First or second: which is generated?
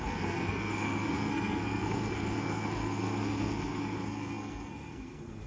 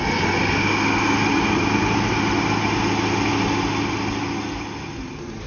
first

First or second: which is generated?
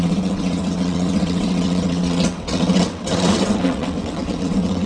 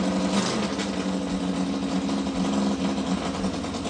first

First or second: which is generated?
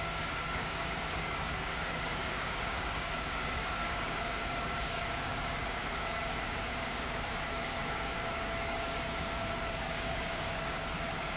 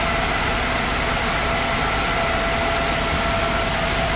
first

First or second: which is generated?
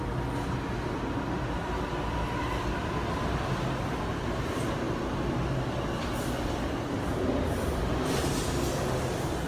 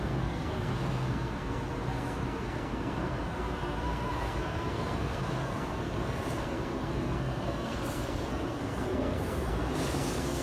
second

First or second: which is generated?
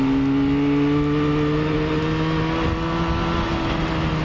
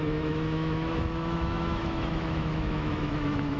second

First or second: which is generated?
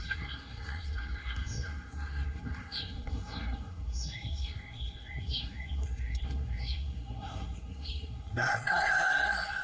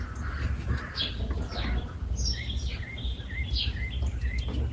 first